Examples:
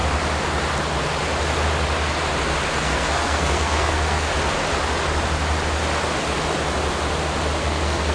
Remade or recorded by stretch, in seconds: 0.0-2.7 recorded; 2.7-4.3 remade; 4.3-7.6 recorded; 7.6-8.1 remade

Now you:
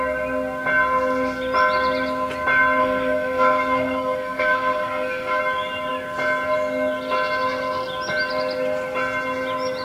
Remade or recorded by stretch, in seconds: 0.0-2.8 recorded; 2.8-5.4 remade; 5.4-9.8 recorded

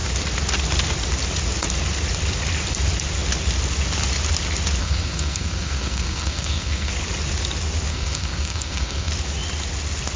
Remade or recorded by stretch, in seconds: 0.0-4.8 recorded; 4.8-6.9 remade; 6.9-7.9 recorded; 7.9-9.1 remade; 9.1-10.2 recorded

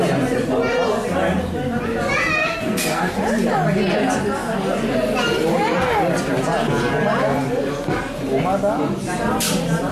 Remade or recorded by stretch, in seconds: 0.0-2.4 recorded; 2.4-3.1 remade; 3.1-9.9 recorded